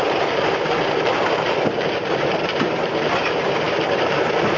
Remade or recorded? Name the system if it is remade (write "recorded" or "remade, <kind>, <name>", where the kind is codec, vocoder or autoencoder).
remade, vocoder, BigVGAN v2